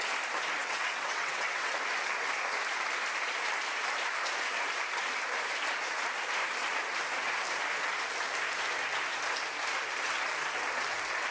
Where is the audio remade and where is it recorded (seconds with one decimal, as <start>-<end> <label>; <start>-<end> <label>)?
0.0-0.6 recorded; 0.6-1.7 remade; 1.7-11.3 recorded